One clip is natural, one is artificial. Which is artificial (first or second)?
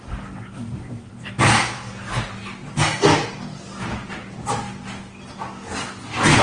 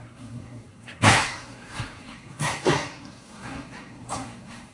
second